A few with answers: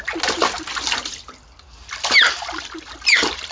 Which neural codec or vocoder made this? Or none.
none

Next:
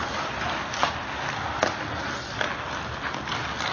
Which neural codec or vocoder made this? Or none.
none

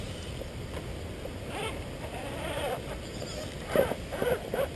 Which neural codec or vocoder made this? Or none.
none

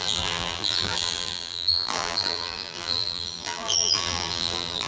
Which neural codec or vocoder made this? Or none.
vocoder, BigVGAN v2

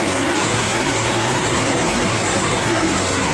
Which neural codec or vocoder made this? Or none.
codec, SNAC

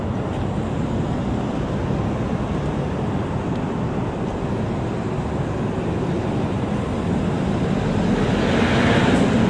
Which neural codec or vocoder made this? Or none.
none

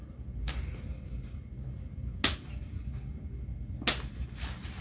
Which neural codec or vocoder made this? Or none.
none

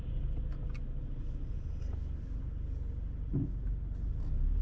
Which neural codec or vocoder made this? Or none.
none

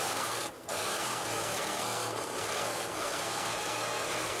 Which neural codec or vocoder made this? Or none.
codec, SNAC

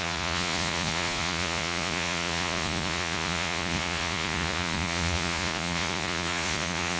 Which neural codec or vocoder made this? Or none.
vocoder, Vocos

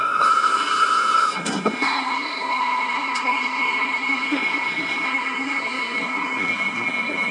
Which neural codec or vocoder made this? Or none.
codec, SNAC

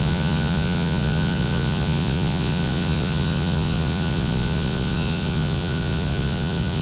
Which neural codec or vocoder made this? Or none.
vocoder, Vocos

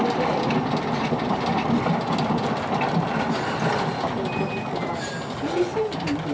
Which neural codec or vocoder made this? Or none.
none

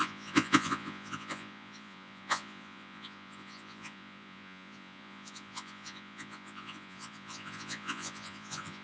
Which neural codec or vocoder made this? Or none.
vocoder, Vocos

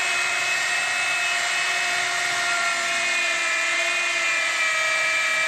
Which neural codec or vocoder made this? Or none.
none